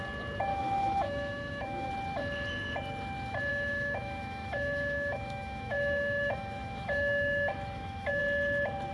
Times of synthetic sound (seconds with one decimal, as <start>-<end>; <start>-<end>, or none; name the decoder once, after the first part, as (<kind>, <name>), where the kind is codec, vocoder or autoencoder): 0.5-1.9 (autoencoder, DAC-VAE); 3.5-8.2